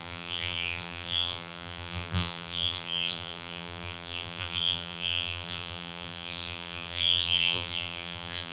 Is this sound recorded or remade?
remade